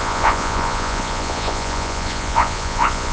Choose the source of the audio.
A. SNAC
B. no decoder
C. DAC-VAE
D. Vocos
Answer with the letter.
D